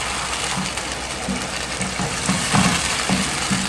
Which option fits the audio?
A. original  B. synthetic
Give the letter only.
A